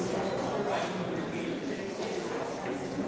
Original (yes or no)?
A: no